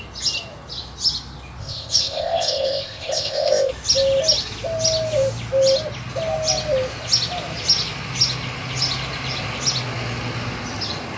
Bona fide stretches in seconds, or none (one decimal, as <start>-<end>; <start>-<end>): 0.0-1.6; 3.7-11.2